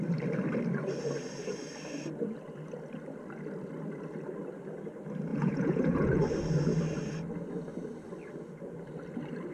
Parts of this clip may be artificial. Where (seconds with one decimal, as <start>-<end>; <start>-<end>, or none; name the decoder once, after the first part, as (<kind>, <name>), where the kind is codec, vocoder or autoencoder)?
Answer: 5.3-6.2 (vocoder, Vocos)

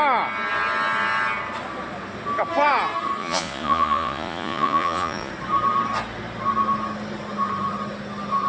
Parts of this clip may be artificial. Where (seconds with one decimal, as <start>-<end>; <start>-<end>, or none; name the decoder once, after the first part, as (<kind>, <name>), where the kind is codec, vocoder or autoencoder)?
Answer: 3.2-5.3 (vocoder, Vocos)

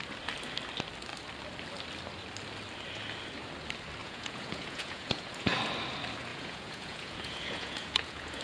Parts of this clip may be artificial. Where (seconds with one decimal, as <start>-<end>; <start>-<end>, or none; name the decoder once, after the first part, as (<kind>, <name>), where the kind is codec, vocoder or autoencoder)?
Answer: 4.0-5.5 (vocoder, Vocos); 6.3-8.4

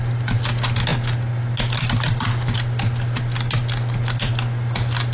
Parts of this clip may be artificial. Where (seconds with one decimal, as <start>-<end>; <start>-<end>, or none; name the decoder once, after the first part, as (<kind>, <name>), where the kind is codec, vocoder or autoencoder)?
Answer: none

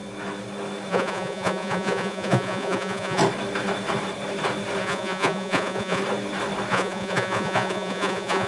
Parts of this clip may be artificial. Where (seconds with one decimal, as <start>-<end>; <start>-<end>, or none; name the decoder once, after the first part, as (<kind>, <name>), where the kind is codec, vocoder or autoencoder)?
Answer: 0.9-3.2 (vocoder, Vocos); 4.8-6.0; 6.7-8.5

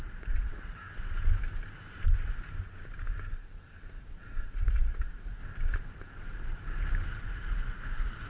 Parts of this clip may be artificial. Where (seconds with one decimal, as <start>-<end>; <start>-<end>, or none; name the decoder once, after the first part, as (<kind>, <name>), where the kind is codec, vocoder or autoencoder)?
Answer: 0.0-0.8 (vocoder, Vocos); 3.8-5.4; 7.1-8.3

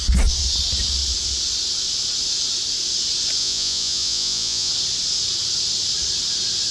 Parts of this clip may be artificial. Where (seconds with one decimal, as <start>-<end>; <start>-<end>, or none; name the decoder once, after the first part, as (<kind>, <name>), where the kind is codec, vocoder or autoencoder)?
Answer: 3.4-4.7 (vocoder, Vocos)

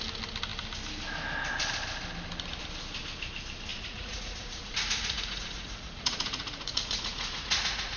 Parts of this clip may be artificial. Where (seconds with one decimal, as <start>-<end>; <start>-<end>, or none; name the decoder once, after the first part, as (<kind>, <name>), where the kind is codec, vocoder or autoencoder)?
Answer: 3.7-8.0 (vocoder, Vocos)